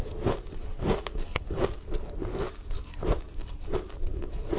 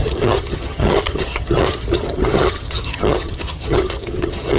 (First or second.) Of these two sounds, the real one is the first